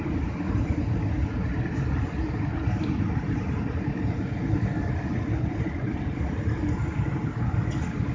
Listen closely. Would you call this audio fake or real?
real